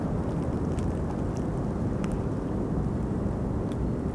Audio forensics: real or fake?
real